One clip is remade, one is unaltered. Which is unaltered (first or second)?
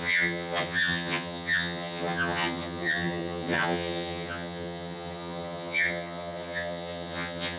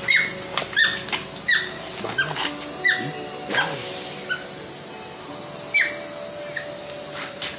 second